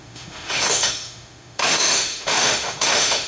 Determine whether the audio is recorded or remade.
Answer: remade